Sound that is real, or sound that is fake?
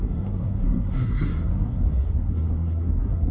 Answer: fake